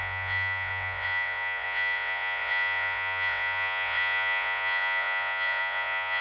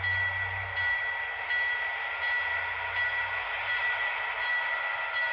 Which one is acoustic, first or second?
second